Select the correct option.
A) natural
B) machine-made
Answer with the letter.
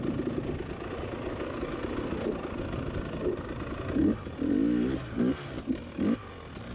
A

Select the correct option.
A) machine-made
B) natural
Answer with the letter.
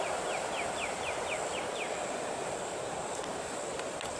B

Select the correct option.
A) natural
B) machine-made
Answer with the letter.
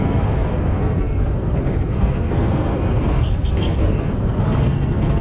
B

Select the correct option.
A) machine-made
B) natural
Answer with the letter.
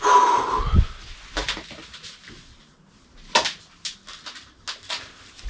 B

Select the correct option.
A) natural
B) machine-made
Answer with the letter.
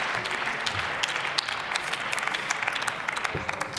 A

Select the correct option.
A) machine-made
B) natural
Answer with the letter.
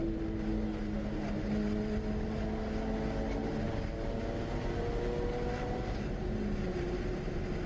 B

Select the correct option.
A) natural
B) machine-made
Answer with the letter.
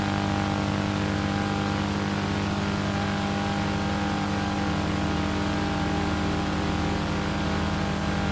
A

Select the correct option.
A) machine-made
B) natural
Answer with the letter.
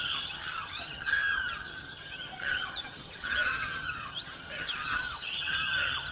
A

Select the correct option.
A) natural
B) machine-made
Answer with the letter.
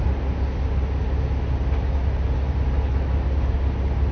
A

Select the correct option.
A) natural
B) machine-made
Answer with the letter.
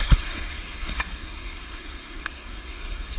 B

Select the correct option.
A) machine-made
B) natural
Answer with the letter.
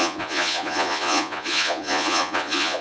A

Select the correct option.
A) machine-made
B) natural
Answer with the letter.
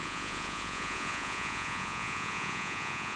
A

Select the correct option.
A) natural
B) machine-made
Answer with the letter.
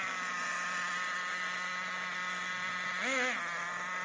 A